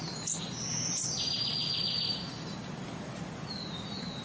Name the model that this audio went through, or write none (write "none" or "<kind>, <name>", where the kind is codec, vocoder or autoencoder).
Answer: none